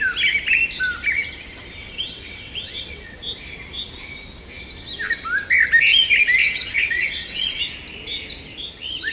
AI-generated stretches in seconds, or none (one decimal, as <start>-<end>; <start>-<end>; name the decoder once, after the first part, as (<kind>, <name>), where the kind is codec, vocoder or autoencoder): 1.8-3.2 (vocoder, WaveNeXt); 6.4-7.6